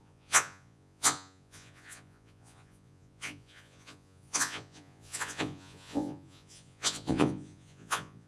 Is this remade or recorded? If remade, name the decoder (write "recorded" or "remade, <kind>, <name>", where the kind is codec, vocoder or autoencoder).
remade, vocoder, Vocos